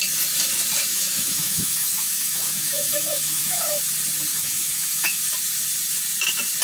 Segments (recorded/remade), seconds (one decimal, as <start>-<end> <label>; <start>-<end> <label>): 0.0-0.9 recorded; 0.9-3.8 remade; 3.8-4.3 recorded; 4.3-5.2 remade; 5.2-6.6 recorded